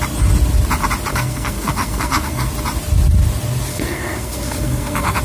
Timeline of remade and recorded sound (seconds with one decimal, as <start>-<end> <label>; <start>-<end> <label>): 0.0-1.1 recorded; 1.1-2.5 remade; 2.5-3.7 recorded; 3.7-5.2 remade